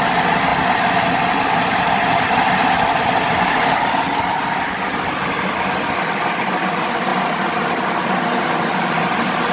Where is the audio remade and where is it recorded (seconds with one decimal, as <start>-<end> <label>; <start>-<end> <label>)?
0.0-0.5 recorded; 0.5-5.1 remade; 5.1-9.5 recorded